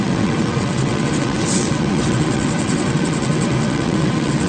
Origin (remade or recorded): remade